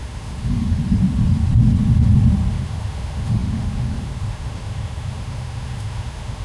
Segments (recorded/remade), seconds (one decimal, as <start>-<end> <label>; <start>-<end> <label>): 0.0-0.8 remade; 0.8-2.5 recorded; 2.5-6.4 remade